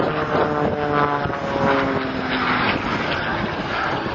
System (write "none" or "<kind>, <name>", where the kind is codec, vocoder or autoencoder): none